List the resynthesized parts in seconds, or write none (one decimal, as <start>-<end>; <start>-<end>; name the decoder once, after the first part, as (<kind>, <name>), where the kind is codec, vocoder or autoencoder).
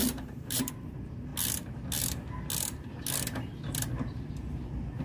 0.0-0.7 (vocoder, BigVGAN v2)